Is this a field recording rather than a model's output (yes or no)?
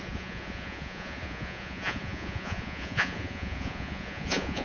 no